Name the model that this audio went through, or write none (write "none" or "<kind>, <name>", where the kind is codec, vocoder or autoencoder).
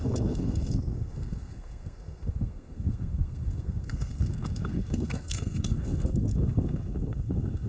codec, SNAC